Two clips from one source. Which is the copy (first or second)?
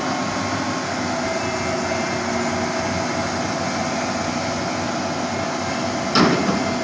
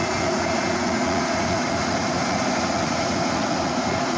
second